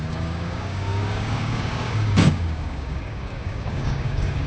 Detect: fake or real fake